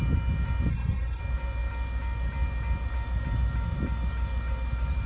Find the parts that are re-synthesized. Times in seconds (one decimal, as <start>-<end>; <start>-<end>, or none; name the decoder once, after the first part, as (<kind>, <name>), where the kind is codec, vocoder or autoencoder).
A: 0.7-1.2 (codec, SNAC)